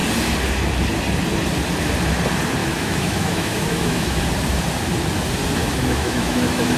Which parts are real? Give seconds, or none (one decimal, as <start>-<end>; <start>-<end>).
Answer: 0.0-2.6; 4.2-5.6